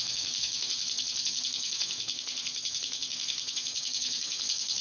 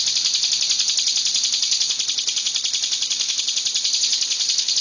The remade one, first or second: first